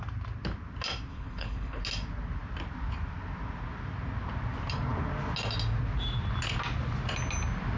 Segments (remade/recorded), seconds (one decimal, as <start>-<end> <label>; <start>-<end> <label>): 0.0-1.1 recorded; 1.1-1.8 remade; 1.8-7.8 recorded